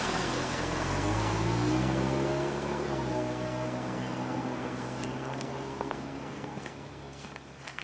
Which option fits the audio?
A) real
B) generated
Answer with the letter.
B